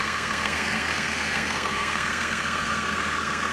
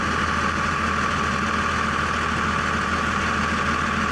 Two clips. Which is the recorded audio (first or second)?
second